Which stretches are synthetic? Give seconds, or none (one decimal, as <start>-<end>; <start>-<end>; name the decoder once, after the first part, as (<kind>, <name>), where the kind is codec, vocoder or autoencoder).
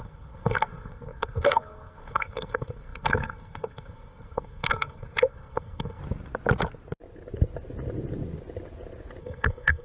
0.0-6.0 (codec, SNAC); 9.2-9.8